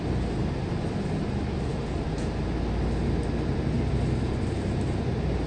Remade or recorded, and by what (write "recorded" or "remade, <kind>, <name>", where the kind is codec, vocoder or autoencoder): recorded